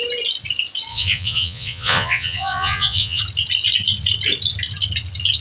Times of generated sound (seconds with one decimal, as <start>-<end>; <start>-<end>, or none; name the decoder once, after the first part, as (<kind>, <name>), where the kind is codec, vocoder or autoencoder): 0.9-3.2 (vocoder, Vocos)